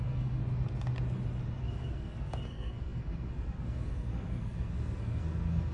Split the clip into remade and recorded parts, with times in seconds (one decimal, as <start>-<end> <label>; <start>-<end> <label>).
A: 0.0-0.4 remade; 0.4-1.6 recorded; 1.6-5.7 remade